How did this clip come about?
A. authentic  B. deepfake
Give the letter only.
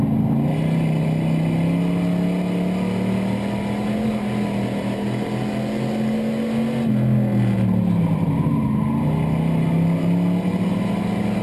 A